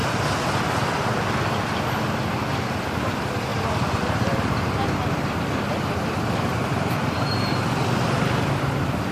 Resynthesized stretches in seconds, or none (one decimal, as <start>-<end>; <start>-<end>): 0.0-0.6; 6.6-7.6